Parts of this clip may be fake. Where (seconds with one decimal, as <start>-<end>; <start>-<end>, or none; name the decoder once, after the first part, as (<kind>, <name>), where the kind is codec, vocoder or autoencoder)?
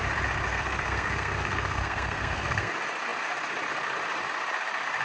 0.5-2.7 (codec, SNAC)